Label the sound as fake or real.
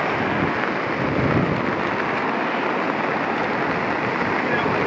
real